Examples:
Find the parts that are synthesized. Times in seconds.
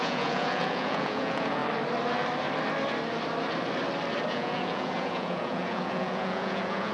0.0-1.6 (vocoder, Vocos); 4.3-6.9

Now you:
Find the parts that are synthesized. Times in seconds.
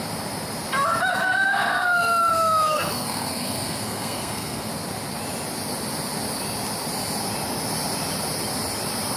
1.1-4.7 (codec, SNAC)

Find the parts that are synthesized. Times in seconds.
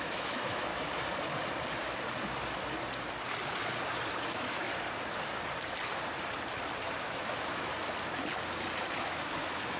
0.0-0.7 (autoencoder, DAC-VAE); 4.2-4.7; 7.0-7.7; 8.9-9.8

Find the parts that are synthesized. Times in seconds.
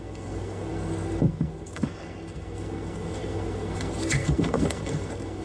0.0-5.4 (codec, SNAC)